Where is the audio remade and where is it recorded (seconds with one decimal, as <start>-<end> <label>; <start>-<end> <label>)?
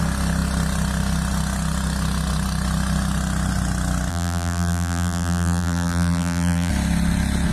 0.0-4.1 recorded; 4.1-6.7 remade; 6.7-7.5 recorded